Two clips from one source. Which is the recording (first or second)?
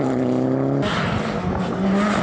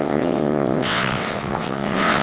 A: first